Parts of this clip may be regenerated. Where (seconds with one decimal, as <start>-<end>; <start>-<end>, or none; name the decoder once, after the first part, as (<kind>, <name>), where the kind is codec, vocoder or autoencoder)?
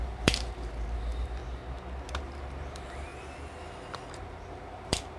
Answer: 0.0-1.4 (vocoder, BigVGAN v2); 2.1-3.1; 4.1-5.2